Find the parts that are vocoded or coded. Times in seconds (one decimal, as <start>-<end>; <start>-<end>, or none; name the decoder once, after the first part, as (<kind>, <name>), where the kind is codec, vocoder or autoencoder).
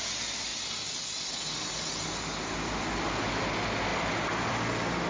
none